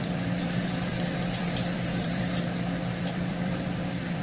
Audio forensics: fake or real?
fake